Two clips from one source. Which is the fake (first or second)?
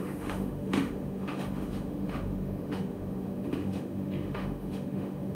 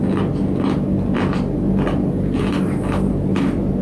first